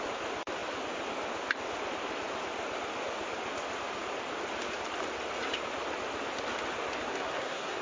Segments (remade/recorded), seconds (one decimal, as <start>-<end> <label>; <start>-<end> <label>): 0.0-7.1 recorded; 7.1-7.8 remade